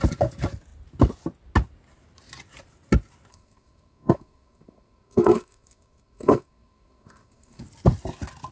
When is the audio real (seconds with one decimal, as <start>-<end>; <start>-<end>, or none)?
0.0-3.3; 7.6-8.5